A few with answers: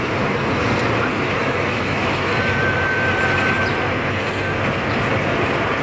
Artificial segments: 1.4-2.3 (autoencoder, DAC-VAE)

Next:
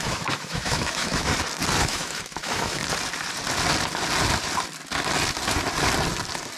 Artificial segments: 0.0-1.3 (autoencoder, DAC-VAE); 1.8-2.8

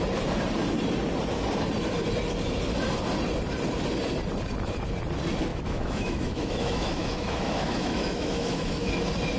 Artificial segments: 5.5-8.9 (autoencoder, DAC-VAE)

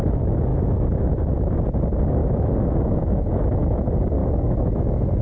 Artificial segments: 0.5-1.2 (autoencoder, DAC-VAE); 2.2-3.3; 4.2-4.8